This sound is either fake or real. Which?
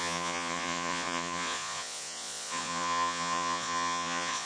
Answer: fake